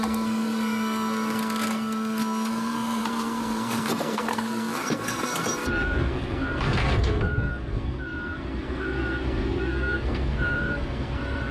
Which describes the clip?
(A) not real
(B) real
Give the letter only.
A